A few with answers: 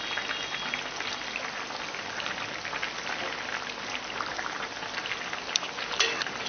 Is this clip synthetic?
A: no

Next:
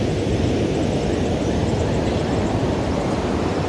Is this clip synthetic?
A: no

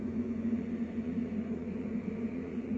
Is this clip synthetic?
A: yes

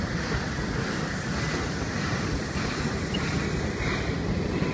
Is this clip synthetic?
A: no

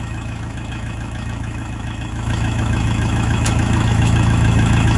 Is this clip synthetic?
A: yes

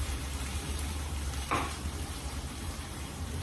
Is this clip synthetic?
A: yes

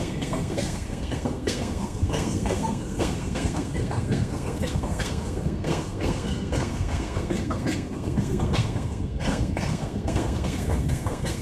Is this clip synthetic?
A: yes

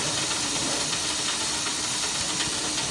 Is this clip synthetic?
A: no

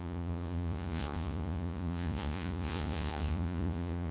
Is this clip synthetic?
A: yes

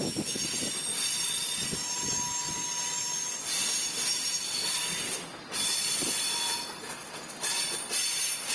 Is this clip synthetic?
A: no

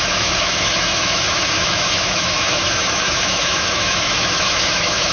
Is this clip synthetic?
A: yes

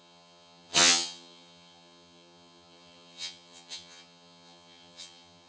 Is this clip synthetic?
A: yes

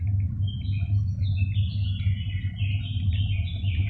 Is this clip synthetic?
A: no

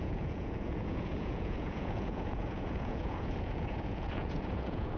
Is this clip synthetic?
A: yes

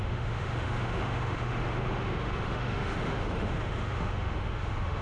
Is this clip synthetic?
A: yes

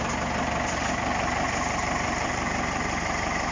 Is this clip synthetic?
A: yes